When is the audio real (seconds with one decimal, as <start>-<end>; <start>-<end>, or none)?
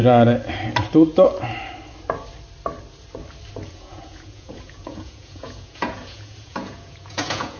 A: 0.0-3.7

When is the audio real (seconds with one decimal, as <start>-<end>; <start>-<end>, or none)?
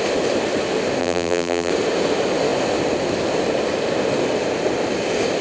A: 0.0-1.0; 1.7-5.4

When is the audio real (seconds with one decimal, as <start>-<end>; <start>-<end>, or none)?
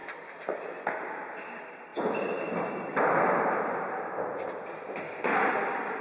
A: 0.0-6.0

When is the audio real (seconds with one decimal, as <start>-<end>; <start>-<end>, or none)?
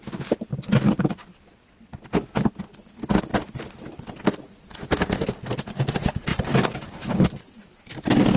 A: 0.0-3.3; 4.0-6.3; 7.2-8.4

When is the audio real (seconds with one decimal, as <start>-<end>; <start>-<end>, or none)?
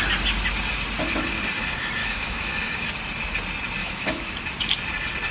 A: 0.0-2.0; 2.9-3.8; 4.3-5.3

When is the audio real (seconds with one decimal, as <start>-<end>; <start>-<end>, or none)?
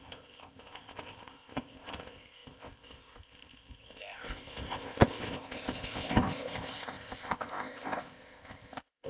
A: none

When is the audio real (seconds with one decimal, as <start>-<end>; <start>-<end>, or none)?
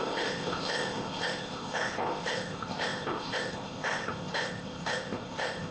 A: none